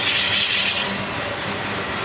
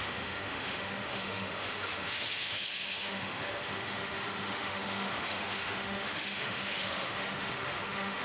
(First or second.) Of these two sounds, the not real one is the second